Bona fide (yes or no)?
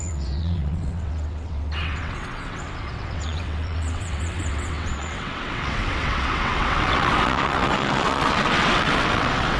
no